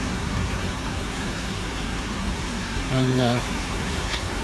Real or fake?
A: fake